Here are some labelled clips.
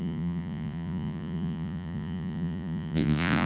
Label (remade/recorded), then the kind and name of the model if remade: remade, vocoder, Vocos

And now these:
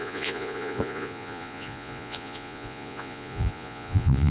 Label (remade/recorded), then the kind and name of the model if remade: remade, vocoder, Vocos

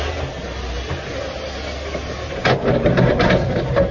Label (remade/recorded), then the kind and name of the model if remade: recorded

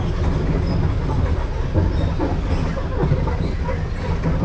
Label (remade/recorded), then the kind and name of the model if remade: recorded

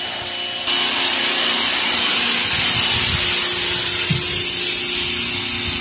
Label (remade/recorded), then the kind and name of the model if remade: recorded